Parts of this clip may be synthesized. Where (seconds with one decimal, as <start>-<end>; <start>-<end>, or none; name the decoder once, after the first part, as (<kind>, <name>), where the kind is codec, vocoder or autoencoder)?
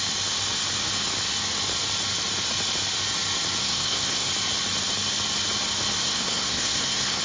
3.6-4.3 (codec, SNAC); 6.0-7.2